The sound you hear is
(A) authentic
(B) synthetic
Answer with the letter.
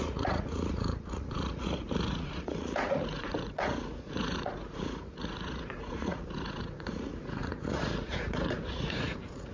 B